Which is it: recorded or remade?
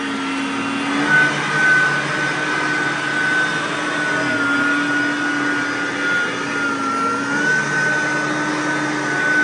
recorded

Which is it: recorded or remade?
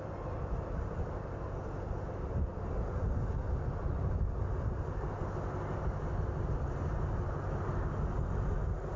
recorded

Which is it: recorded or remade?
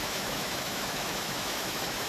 remade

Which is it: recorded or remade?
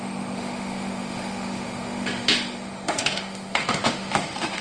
remade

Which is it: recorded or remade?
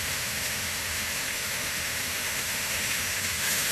remade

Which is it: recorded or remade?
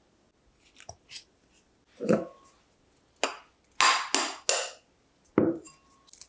recorded